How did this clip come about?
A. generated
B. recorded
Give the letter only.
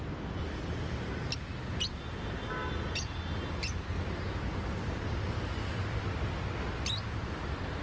B